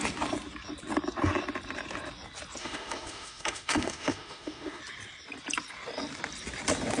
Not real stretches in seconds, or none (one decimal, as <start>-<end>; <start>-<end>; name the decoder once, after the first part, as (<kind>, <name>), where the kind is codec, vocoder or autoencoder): 2.6-4.8 (autoencoder, DAC-VAE)